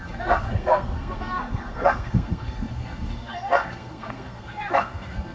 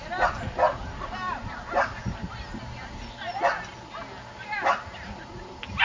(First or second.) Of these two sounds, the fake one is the first